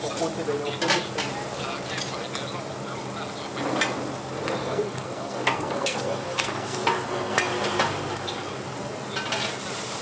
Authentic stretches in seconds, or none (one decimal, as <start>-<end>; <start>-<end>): 0.0-4.6; 7.4-10.0